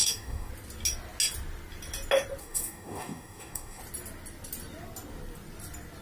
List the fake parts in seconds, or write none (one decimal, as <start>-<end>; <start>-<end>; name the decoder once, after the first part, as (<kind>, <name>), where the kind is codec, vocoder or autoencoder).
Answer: 0.0-0.5 (codec, DAC); 2.4-3.8

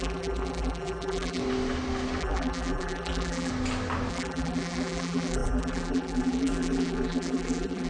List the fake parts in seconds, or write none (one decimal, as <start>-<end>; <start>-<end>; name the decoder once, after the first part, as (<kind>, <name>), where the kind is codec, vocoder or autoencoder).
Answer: 0.0-1.4 (vocoder, BigVGAN v2); 2.2-3.5; 4.1-7.9

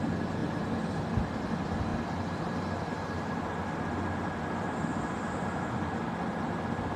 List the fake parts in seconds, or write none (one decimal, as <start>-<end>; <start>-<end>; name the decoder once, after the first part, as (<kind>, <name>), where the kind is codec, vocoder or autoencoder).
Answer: 0.4-1.0 (vocoder, BigVGAN v2); 4.9-6.0

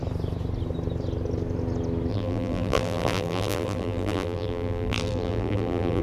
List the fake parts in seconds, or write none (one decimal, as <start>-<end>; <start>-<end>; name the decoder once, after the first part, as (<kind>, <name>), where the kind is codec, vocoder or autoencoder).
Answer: 2.1-6.0 (vocoder, BigVGAN v2)